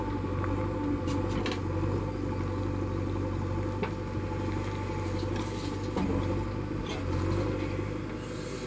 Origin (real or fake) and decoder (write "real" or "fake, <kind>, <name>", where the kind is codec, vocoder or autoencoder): real